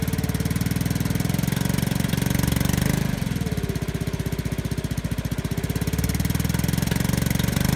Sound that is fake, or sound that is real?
real